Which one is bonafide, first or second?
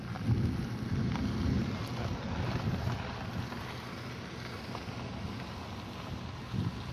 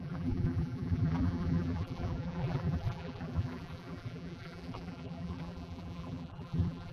first